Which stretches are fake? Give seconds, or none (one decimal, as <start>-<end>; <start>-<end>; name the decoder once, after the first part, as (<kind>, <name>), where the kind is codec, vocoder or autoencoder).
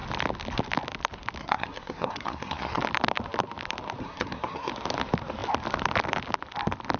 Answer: 1.4-2.8 (codec, SNAC); 4.0-4.7